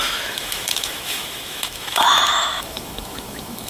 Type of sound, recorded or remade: remade